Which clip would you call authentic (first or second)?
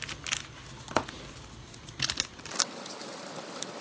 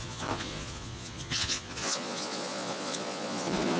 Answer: first